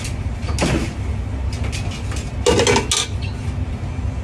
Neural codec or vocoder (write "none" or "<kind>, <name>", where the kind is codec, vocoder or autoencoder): none